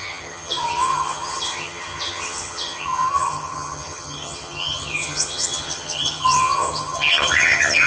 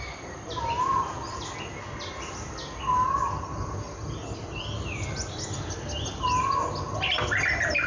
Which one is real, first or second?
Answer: second